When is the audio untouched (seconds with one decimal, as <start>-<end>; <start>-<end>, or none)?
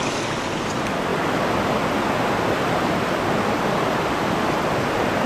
0.0-5.3